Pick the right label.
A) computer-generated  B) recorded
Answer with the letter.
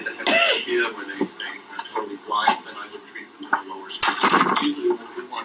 B